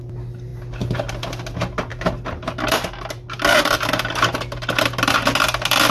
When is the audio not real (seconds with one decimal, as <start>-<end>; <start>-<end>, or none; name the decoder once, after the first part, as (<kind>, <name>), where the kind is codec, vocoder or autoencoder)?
none